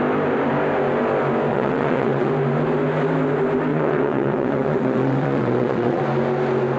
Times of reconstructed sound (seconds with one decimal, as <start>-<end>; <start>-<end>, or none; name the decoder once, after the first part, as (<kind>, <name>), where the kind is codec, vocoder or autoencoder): 1.5-2.3 (vocoder, WaveNeXt); 3.7-6.0